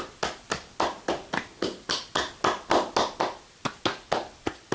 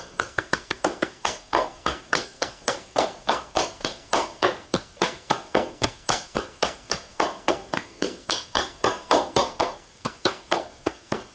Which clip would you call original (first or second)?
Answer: first